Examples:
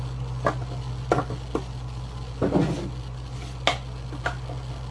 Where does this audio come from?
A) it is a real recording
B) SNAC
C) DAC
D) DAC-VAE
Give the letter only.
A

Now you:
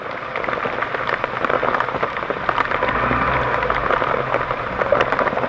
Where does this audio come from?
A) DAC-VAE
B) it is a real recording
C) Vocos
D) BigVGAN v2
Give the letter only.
B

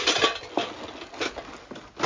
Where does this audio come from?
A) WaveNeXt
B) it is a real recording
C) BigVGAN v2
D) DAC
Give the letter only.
B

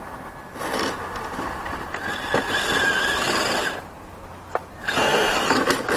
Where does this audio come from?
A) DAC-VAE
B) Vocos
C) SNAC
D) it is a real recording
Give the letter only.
D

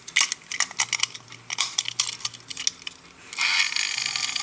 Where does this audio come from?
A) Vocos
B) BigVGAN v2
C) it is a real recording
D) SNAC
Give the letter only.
C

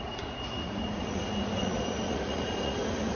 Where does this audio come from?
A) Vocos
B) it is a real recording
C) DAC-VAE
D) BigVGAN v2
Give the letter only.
A